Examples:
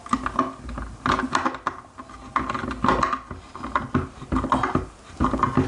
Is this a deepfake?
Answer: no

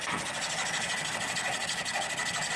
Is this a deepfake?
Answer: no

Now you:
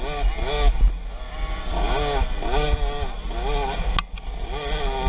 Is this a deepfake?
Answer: no